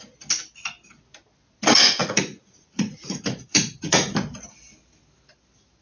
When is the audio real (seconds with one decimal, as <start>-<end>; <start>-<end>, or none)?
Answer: 0.0-2.0; 4.1-5.8